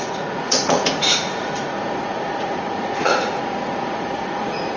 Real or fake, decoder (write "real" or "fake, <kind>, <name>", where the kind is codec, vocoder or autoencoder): fake, vocoder, Vocos